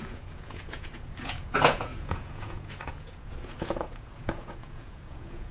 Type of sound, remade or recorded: remade